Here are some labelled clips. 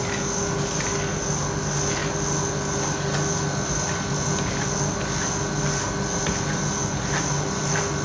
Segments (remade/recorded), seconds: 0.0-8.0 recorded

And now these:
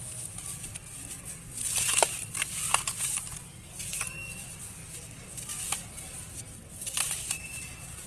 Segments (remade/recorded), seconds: 0.0-8.1 recorded